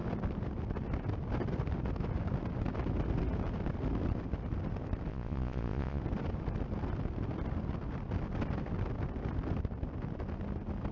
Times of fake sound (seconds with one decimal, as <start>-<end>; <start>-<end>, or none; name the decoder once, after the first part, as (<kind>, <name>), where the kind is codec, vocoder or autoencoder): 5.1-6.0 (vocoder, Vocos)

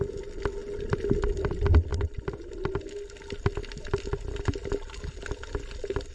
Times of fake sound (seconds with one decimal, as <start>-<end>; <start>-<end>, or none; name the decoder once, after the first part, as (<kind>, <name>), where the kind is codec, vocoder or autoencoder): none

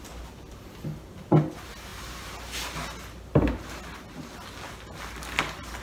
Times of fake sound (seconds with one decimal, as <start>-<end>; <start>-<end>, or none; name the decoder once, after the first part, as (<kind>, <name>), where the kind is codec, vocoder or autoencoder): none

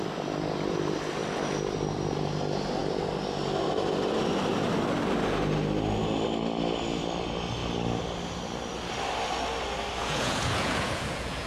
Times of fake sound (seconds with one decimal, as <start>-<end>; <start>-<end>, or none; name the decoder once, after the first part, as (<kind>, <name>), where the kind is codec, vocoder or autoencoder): 10.0-11.5 (vocoder, Vocos)